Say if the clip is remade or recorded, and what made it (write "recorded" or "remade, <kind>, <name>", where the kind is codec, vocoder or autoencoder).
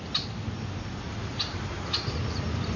recorded